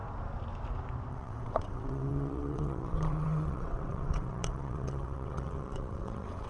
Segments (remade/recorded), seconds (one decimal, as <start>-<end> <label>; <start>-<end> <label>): 0.0-1.1 recorded; 1.1-6.5 remade